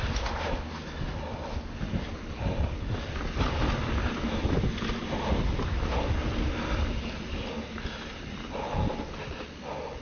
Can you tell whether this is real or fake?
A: real